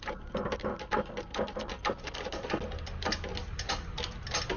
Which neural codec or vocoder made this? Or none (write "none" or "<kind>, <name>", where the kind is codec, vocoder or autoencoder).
none